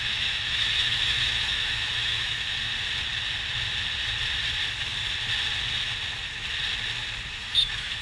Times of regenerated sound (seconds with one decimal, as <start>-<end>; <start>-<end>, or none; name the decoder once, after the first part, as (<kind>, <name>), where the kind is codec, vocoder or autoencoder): 0.0-2.7 (autoencoder, DAC-VAE); 7.3-8.0